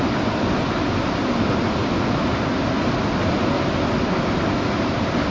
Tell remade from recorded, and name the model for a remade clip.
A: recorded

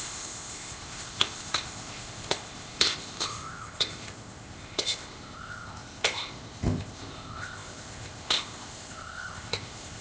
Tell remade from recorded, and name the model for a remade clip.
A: remade, codec, ZipCodec